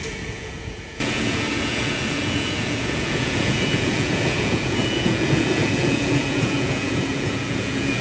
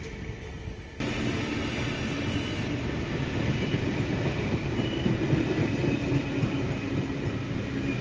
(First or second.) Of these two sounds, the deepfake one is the first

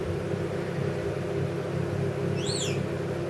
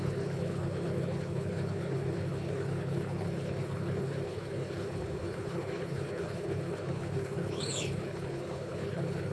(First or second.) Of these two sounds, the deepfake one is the second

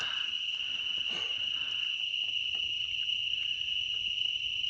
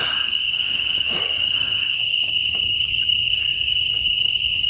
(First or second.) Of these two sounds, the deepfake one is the second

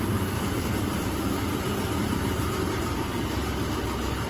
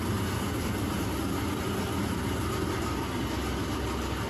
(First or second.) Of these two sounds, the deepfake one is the first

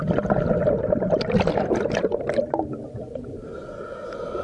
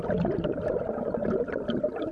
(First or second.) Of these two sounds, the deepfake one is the second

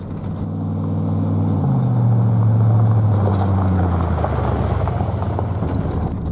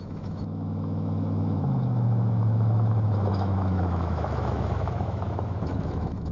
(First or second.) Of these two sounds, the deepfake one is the second